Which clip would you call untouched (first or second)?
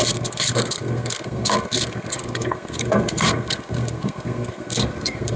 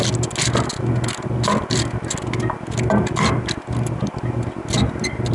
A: second